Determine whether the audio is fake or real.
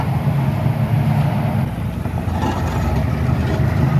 real